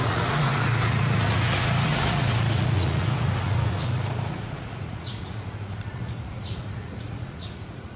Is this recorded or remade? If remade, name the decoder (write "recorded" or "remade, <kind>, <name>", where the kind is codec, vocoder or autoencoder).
remade, vocoder, Vocos